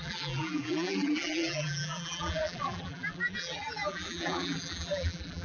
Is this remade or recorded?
remade